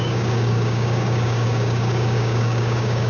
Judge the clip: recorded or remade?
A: remade